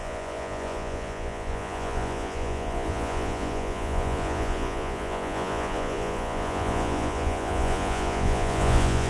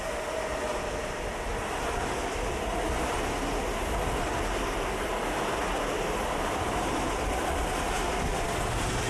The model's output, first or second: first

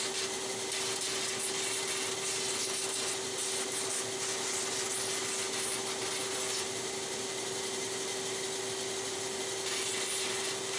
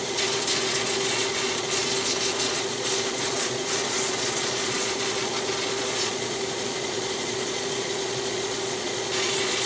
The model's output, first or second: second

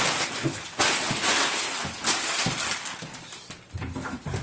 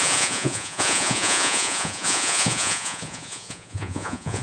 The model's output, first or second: second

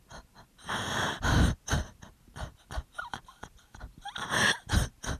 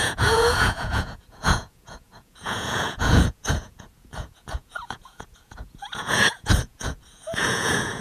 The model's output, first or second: second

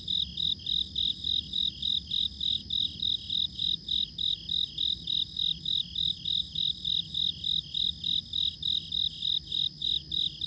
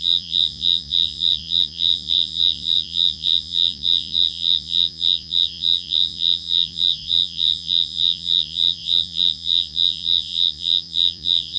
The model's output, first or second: second